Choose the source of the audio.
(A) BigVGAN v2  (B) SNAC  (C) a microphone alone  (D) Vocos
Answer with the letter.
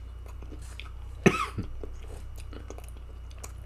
C